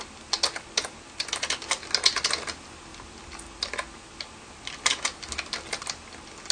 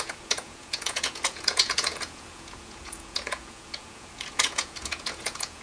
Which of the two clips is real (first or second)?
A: first